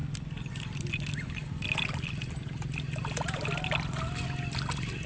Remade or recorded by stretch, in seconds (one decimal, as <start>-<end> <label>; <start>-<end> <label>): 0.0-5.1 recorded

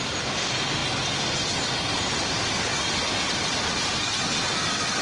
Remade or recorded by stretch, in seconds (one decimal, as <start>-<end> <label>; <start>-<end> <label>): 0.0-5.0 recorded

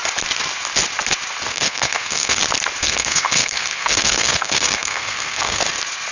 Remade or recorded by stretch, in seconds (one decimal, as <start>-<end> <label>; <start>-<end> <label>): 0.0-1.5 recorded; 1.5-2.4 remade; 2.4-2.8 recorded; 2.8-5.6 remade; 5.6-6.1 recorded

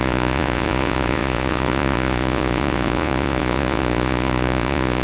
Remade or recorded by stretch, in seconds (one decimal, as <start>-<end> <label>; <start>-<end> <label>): 0.0-5.0 remade

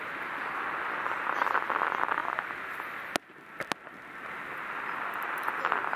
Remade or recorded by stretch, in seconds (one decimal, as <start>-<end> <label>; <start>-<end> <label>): 0.0-6.0 recorded

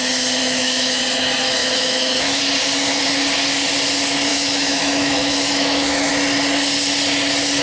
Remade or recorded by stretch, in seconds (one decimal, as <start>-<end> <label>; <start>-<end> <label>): 0.0-0.4 recorded; 0.4-1.0 remade; 1.0-1.6 recorded; 1.6-2.4 remade; 2.4-4.3 recorded; 4.3-6.1 remade; 6.1-7.6 recorded